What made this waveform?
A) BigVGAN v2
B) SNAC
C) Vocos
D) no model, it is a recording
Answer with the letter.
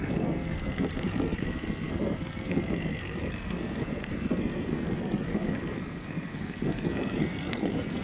B